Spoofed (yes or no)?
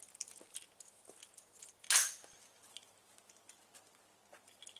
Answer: no